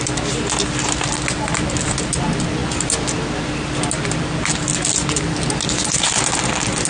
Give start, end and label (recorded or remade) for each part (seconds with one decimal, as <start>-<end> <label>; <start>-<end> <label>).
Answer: 0.0-6.9 recorded

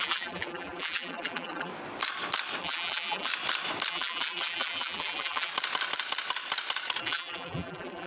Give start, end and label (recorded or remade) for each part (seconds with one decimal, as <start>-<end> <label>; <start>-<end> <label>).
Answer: 0.0-1.7 remade; 1.7-2.6 recorded; 2.6-3.3 remade; 3.3-3.9 recorded; 3.9-5.5 remade; 5.5-7.0 recorded; 7.0-8.1 remade

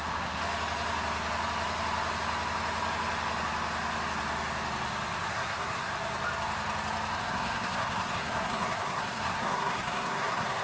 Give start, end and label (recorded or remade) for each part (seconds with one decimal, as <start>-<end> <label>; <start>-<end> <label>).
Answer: 0.0-0.4 remade; 0.4-5.3 recorded; 5.3-5.9 remade; 5.9-7.2 recorded; 7.2-10.6 remade

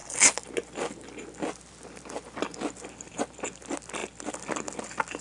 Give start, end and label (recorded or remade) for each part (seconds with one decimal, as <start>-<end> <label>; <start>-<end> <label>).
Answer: 0.0-5.2 recorded